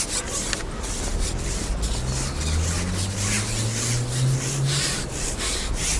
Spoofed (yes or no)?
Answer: no